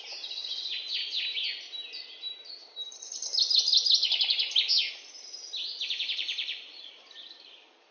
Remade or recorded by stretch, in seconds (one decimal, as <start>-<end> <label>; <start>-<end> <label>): 0.0-2.6 recorded; 2.6-3.1 remade; 3.1-5.8 recorded; 5.8-6.9 remade; 6.9-7.9 recorded